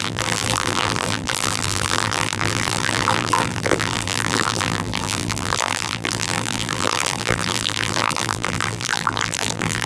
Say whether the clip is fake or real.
fake